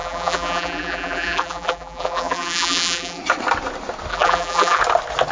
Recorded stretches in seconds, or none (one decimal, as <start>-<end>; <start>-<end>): 3.2-4.1; 4.8-5.3